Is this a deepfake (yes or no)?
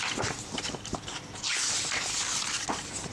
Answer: yes